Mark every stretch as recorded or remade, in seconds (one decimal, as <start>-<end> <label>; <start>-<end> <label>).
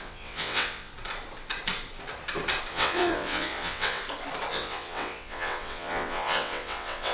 0.0-0.9 remade; 0.9-2.7 recorded; 2.7-4.0 remade; 4.0-4.5 recorded; 4.5-7.1 remade